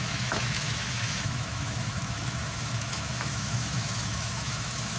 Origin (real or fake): fake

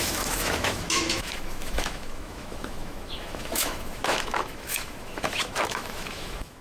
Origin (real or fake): fake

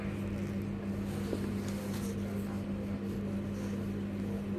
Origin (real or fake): real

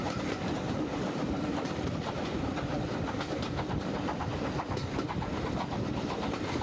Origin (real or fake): real